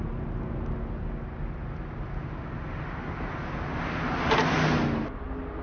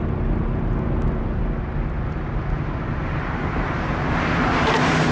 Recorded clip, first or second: first